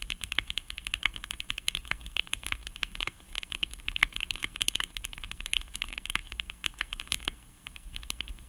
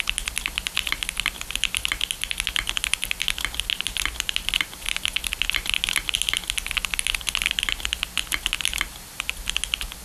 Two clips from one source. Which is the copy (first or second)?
first